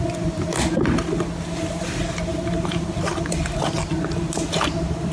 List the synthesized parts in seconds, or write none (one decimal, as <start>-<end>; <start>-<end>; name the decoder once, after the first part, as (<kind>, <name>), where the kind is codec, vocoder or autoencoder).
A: 2.3-3.1 (vocoder, BigVGAN v2)